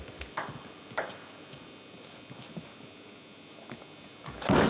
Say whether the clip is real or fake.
real